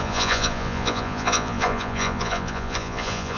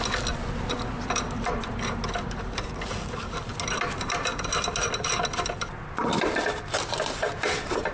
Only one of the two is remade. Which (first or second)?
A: first